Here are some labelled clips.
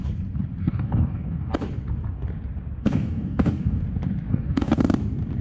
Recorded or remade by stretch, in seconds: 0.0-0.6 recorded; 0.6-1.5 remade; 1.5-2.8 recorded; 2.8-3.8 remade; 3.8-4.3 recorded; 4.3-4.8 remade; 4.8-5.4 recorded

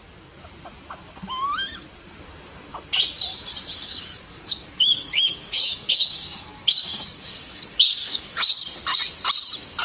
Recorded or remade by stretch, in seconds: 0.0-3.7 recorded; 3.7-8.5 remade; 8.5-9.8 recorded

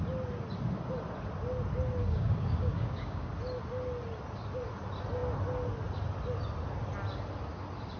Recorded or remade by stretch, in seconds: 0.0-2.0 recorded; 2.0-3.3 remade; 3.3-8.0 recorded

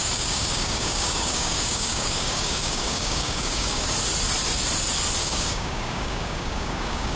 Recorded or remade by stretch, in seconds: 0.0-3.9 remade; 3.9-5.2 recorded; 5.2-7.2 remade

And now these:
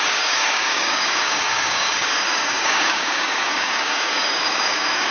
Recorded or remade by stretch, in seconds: 0.0-5.1 remade